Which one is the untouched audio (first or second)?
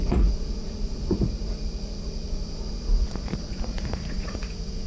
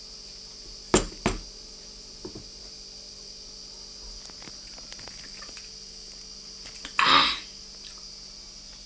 second